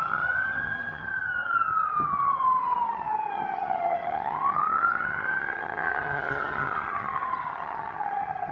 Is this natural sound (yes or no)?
no